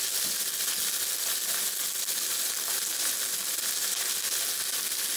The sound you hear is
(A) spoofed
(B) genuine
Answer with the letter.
B